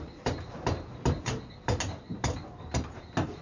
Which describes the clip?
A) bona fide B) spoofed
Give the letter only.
A